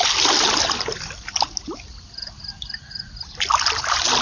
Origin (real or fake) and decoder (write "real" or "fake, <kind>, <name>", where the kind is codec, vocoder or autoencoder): real